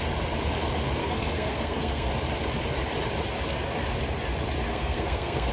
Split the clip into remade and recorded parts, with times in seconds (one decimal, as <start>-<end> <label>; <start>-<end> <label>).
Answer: 0.0-1.0 recorded; 1.0-2.1 remade; 2.1-4.7 recorded; 4.7-5.5 remade